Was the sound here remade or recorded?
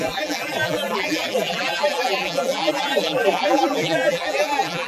remade